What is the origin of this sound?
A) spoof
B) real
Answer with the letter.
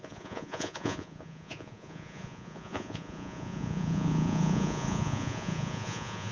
A